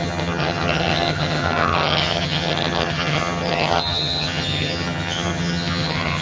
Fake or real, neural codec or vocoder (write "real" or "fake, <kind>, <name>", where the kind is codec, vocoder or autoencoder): fake, vocoder, HiFi-GAN